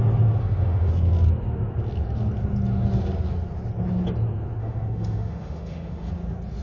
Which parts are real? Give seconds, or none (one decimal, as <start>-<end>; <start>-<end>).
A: 0.0-0.4; 0.9-4.6; 6.1-6.6